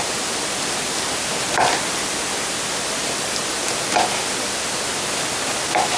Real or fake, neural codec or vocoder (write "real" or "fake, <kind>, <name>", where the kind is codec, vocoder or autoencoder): fake, vocoder, BigVGAN v2